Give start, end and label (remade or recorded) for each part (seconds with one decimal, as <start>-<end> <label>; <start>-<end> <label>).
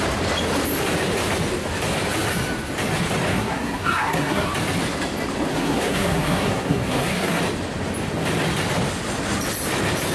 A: 0.0-3.3 recorded; 3.3-4.5 remade; 4.5-5.5 recorded; 5.5-7.4 remade; 7.4-10.1 recorded